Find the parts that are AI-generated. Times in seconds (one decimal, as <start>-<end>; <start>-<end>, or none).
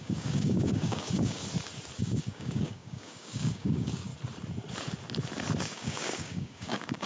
0.0-1.4; 2.0-4.1; 5.6-7.1